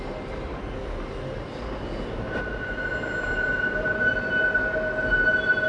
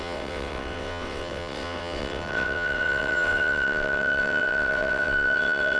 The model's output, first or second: second